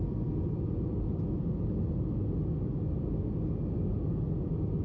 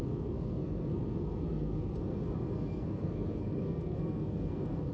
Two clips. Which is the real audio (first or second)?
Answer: first